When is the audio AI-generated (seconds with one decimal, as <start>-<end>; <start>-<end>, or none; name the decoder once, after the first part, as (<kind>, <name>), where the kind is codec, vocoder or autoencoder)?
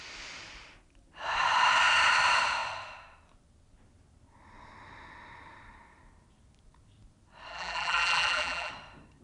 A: 7.5-8.7 (vocoder, BigVGAN v2)